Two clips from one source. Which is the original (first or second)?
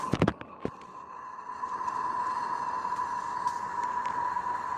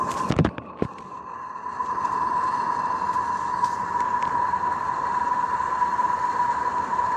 first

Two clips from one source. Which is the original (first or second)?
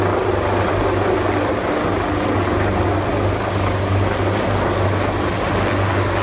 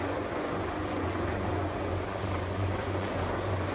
first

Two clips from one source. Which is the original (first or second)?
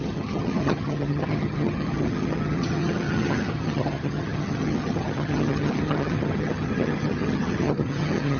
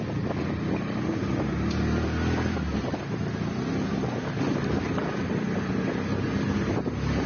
second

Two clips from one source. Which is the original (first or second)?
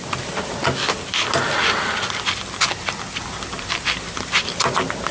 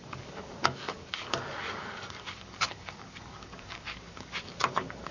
first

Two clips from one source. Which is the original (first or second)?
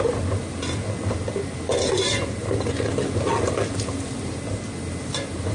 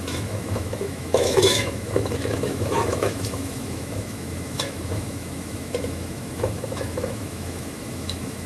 first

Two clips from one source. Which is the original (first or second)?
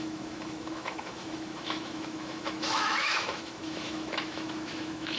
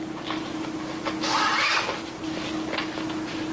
second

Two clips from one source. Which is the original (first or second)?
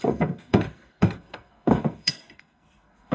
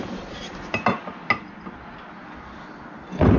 second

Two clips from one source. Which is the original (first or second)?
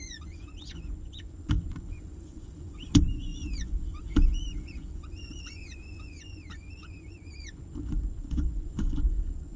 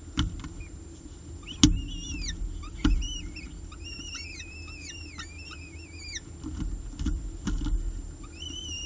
second